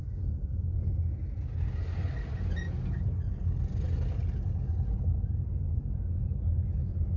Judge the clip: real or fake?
real